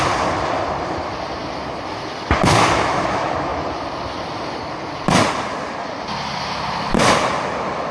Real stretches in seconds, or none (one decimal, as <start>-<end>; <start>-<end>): 0.0-7.9